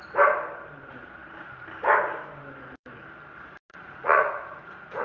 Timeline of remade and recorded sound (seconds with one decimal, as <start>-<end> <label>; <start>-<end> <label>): 0.0-3.7 recorded; 3.7-5.0 remade